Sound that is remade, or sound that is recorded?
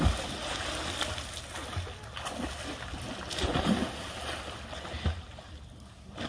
recorded